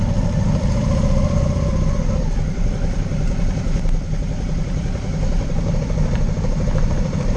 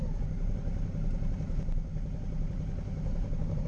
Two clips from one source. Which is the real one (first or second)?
second